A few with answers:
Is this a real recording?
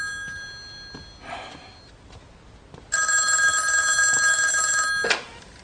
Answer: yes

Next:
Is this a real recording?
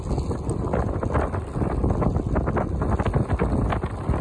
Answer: yes